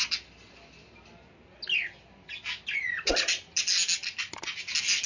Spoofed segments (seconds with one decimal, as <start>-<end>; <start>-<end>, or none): none